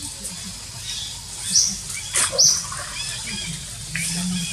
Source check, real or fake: real